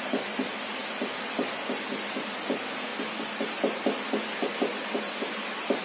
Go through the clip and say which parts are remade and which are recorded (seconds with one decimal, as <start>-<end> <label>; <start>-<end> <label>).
0.0-5.8 recorded